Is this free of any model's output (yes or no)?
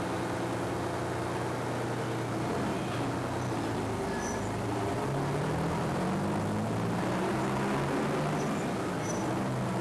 yes